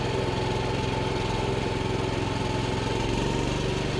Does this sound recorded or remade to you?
recorded